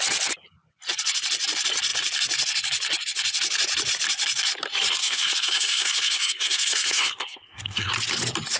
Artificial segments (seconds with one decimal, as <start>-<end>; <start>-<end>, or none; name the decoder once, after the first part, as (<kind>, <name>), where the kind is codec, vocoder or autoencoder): 5.0-7.9 (codec, SNAC)

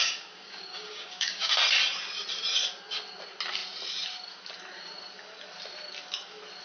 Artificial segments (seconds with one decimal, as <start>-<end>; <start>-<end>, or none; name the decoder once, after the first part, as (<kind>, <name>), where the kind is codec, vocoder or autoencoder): 0.0-1.5 (codec, DAC)

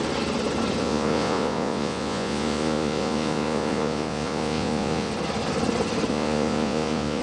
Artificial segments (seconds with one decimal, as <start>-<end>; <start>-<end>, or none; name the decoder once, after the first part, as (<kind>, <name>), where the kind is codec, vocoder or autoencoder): 0.8-5.1 (vocoder, Vocos); 6.1-7.2

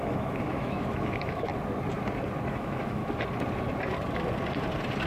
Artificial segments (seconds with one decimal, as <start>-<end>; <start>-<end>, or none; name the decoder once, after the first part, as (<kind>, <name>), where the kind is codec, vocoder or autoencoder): 0.0-1.5 (autoencoder, DAC-VAE); 2.5-3.0

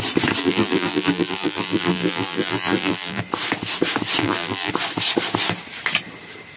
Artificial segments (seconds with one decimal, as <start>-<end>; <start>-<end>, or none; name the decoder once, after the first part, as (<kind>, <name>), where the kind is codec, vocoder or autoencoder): 0.4-3.2 (vocoder, BigVGAN v2); 4.2-4.7

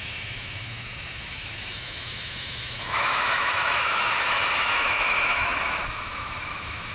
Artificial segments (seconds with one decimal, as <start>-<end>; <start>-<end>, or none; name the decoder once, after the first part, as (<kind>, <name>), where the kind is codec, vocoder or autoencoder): 0.0-6.9 (autoencoder, DAC-VAE)